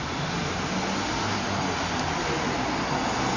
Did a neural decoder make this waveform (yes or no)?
no